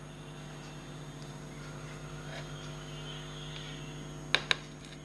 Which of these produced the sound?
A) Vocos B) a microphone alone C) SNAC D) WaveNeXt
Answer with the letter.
B